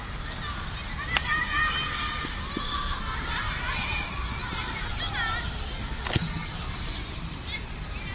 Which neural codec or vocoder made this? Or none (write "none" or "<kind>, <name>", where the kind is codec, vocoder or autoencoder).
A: none